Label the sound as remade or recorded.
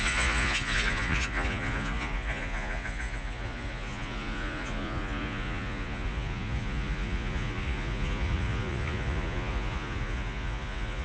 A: remade